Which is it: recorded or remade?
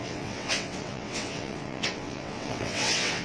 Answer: remade